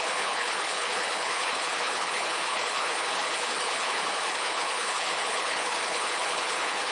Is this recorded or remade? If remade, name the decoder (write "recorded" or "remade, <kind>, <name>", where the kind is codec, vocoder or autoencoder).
remade, codec, HILCodec